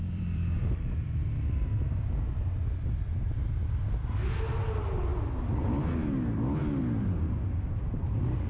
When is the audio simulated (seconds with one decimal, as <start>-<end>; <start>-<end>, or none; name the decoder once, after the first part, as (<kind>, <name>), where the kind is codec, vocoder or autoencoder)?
0.0-0.6 (vocoder, BigVGAN v2)